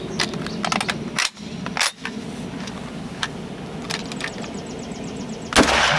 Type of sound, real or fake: real